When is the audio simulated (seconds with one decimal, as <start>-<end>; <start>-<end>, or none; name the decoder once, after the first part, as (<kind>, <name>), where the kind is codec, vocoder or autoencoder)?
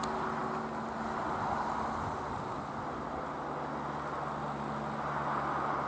none